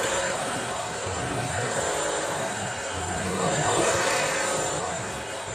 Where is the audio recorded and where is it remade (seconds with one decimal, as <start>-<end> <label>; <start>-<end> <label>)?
0.0-1.8 remade; 1.8-2.4 recorded; 2.4-4.1 remade; 4.1-4.8 recorded; 4.8-5.5 remade